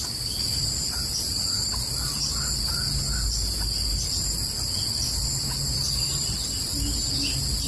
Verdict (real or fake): real